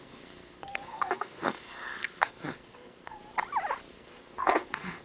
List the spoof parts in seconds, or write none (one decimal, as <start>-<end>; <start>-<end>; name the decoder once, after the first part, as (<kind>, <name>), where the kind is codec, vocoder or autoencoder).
0.0-3.2 (codec, SNAC); 3.9-5.0